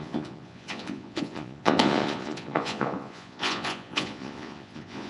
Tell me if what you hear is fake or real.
fake